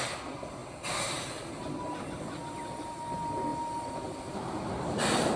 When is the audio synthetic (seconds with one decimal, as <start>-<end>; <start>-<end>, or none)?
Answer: none